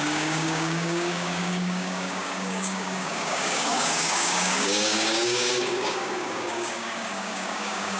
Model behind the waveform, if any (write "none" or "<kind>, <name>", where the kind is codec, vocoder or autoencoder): codec, DAC